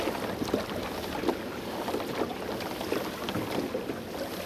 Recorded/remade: recorded